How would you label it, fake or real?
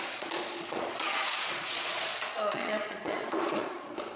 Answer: fake